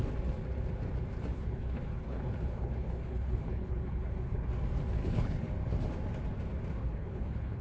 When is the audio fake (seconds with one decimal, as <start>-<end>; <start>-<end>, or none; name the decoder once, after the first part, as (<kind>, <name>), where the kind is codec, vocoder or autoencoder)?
1.3-4.5 (codec, HILCodec); 5.0-5.5; 6.8-7.6